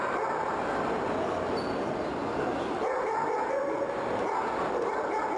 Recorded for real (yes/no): yes